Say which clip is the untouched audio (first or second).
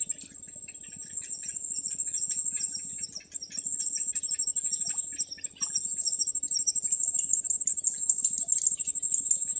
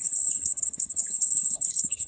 first